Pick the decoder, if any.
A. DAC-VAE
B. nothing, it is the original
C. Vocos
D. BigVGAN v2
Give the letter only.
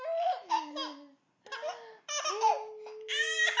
B